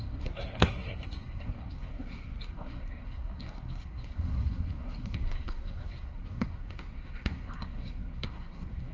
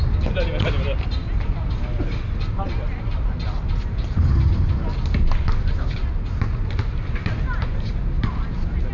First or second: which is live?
second